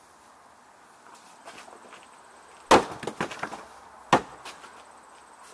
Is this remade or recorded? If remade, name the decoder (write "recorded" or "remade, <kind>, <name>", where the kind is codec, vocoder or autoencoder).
recorded